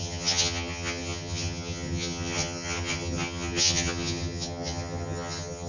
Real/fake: fake